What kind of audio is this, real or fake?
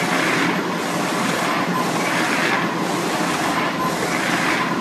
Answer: real